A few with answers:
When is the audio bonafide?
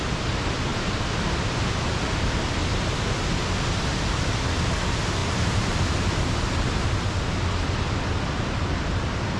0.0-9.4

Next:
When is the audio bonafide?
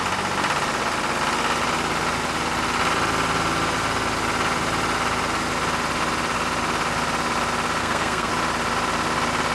0.0-7.8; 8.3-9.5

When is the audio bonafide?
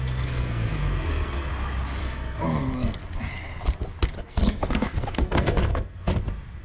1.5-2.0; 3.0-4.2; 6.1-6.6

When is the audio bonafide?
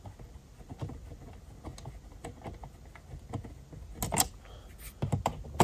0.0-5.6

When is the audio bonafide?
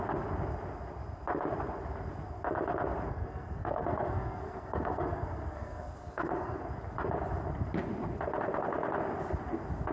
0.0-3.1; 6.6-9.9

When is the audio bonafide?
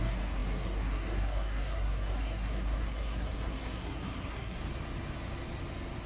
4.6-6.1